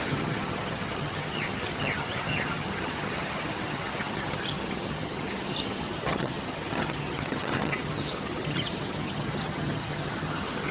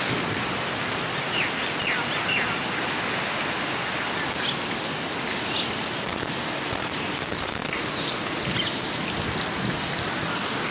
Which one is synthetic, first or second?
first